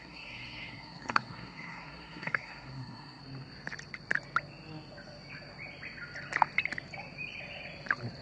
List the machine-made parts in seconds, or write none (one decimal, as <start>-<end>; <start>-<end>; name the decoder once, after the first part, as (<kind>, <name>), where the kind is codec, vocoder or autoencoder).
0.0-3.2 (codec, SNAC)